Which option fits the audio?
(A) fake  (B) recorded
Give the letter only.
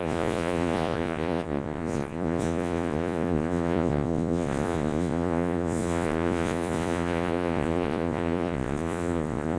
A